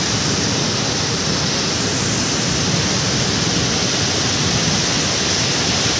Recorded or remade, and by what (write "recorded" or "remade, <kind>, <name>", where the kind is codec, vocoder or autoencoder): recorded